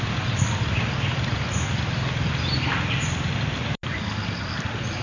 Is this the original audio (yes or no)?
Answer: yes